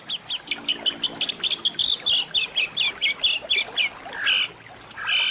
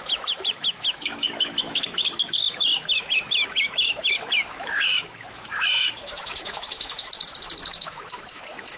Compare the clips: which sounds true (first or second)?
first